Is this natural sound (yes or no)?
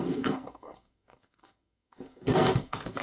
no